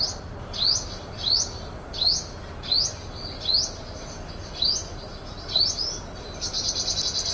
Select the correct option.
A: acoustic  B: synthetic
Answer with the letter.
A